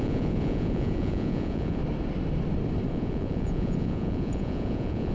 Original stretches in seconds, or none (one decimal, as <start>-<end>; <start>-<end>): 1.8-2.9